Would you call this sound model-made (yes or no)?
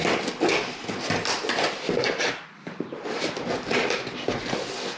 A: no